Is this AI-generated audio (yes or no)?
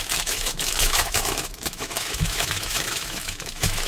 yes